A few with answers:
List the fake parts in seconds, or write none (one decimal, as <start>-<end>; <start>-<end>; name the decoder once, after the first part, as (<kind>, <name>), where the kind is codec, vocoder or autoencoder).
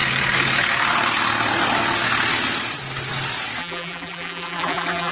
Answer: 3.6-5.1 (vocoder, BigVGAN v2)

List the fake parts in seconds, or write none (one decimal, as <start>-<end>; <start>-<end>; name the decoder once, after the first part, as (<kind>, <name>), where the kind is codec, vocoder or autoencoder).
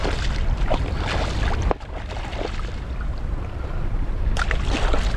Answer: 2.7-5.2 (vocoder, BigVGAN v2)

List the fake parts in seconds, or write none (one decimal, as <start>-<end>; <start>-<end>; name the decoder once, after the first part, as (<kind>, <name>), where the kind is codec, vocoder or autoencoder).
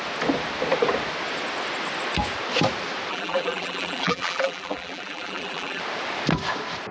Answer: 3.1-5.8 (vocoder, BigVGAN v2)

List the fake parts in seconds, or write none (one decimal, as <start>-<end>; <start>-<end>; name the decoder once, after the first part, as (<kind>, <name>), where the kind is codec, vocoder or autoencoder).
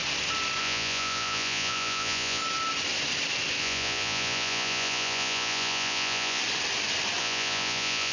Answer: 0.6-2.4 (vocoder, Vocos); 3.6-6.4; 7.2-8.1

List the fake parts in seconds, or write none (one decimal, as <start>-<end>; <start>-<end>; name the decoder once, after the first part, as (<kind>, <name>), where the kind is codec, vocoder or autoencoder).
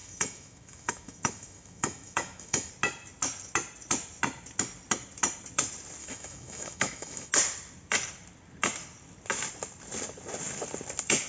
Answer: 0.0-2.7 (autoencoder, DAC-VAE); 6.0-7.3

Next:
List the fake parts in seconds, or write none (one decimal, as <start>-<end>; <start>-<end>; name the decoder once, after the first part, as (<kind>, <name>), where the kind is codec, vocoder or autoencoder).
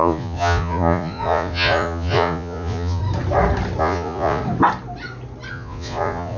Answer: 0.0-3.0 (vocoder, Vocos); 3.8-4.4; 5.5-6.4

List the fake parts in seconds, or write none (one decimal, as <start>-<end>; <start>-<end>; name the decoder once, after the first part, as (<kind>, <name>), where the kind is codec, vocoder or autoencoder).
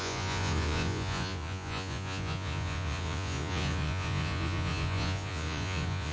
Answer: 0.0-6.1 (vocoder, Vocos)